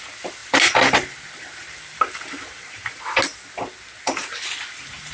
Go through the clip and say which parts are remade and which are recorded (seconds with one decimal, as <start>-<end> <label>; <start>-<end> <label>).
0.0-5.1 recorded

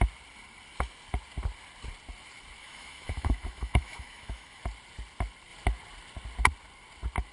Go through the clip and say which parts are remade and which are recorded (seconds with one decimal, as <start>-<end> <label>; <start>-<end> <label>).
0.0-2.6 recorded; 2.6-4.6 remade; 4.6-7.3 recorded

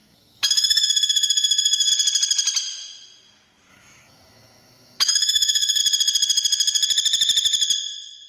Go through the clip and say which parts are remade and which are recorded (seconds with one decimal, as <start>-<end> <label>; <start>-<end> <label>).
0.0-1.9 remade; 1.9-3.7 recorded; 3.7-5.8 remade; 5.8-8.3 recorded